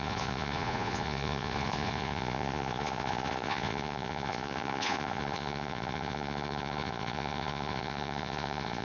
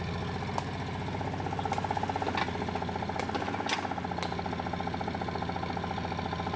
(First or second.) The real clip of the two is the second